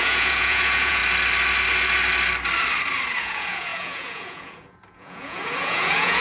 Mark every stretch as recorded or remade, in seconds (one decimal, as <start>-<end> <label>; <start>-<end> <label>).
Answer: 0.0-1.0 remade; 1.0-3.2 recorded; 3.2-6.2 remade